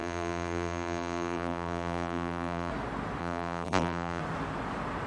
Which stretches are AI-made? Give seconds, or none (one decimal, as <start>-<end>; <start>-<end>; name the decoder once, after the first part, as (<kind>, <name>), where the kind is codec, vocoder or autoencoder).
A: 0.0-2.7 (vocoder, BigVGAN v2); 3.2-4.2

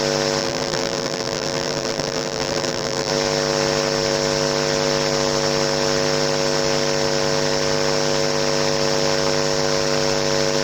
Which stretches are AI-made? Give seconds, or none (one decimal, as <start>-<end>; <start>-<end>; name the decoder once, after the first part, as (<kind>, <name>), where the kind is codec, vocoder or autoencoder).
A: 0.4-3.1 (vocoder, BigVGAN v2)

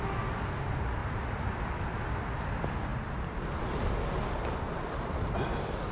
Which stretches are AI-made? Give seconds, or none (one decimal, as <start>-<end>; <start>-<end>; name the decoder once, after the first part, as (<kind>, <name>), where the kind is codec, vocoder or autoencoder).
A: 1.0-2.4 (vocoder, BigVGAN v2); 2.9-4.1

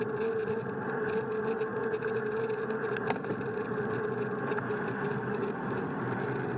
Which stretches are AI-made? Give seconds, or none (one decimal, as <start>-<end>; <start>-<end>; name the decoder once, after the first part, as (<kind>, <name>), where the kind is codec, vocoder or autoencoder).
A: none

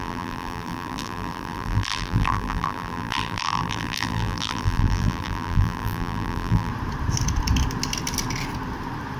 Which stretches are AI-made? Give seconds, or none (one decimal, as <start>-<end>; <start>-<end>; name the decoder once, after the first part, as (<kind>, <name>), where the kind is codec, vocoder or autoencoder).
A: 0.0-6.7 (vocoder, BigVGAN v2)

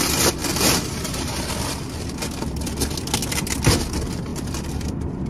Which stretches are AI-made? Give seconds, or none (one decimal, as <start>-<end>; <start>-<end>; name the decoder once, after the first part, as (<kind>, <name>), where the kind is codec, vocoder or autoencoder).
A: 0.4-1.5 (vocoder, BigVGAN v2); 4.3-5.3

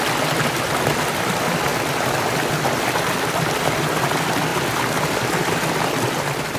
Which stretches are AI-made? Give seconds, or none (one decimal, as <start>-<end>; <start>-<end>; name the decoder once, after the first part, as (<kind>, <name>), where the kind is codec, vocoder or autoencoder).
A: 1.7-2.8 (vocoder, BigVGAN v2); 4.5-5.5

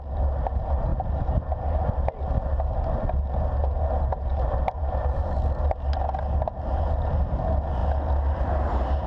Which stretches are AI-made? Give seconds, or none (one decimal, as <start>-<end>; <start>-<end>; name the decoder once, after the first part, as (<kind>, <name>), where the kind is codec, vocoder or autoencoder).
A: 4.3-5.4 (vocoder, BigVGAN v2)